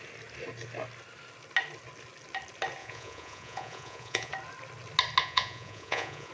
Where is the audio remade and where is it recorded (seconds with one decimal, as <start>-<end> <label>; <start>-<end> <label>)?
0.0-2.8 recorded; 2.8-4.3 remade; 4.3-5.2 recorded; 5.2-6.3 remade